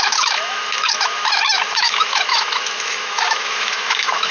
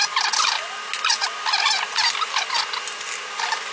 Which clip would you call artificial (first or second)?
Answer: first